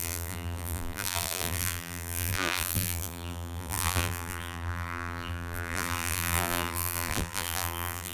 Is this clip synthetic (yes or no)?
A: yes